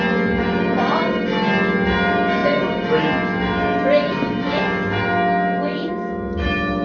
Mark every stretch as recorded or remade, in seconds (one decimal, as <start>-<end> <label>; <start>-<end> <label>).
0.0-6.8 recorded